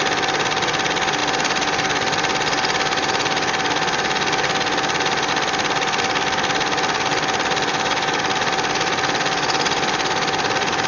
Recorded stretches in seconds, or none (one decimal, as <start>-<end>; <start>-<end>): 0.0-7.7; 8.2-10.9